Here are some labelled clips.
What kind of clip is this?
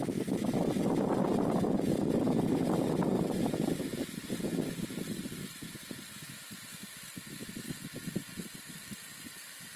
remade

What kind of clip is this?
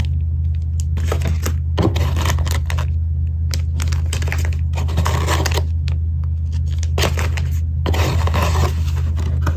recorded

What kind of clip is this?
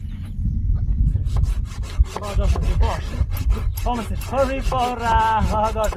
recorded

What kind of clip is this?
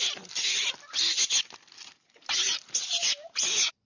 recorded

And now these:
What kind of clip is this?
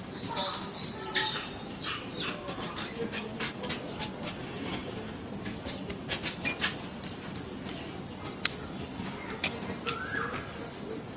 recorded